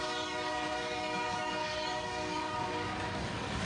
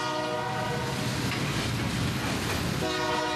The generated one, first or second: first